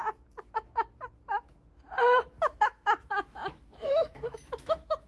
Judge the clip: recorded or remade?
remade